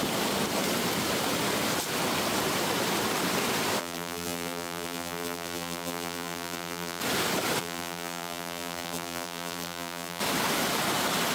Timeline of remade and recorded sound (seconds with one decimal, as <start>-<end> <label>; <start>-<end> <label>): 0.0-3.8 recorded; 3.8-7.0 remade; 7.0-7.6 recorded; 7.6-10.2 remade; 10.2-11.3 recorded